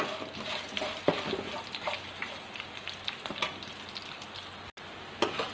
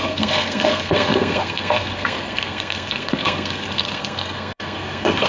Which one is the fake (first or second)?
second